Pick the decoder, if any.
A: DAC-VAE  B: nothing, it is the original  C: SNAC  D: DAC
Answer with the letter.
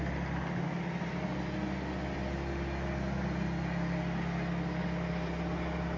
B